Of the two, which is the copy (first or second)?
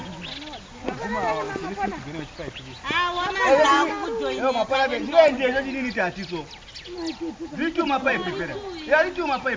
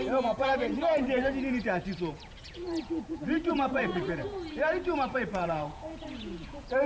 second